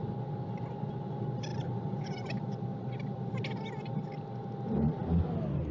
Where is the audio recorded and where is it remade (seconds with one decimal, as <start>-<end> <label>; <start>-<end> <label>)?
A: 0.0-1.5 recorded; 1.5-3.3 remade; 3.3-5.7 recorded